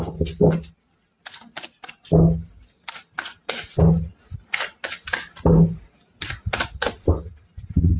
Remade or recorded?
recorded